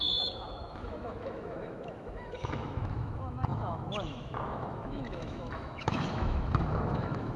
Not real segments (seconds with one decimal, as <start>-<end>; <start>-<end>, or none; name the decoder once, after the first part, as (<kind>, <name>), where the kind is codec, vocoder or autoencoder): 0.0-7.4 (autoencoder, DAC-VAE)